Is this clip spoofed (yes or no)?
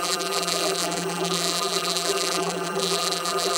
yes